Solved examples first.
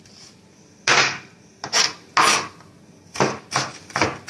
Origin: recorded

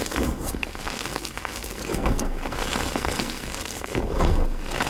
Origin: remade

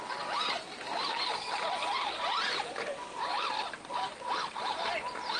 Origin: recorded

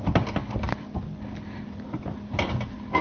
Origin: recorded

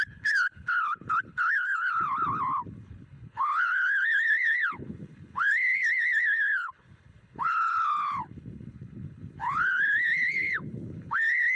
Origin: remade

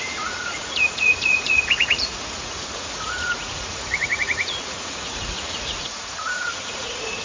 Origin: remade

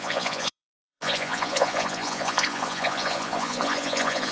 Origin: remade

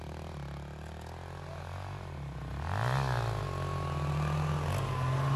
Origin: recorded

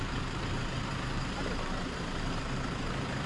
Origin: remade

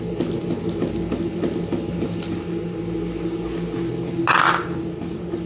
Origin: recorded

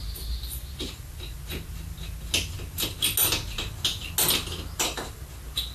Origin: recorded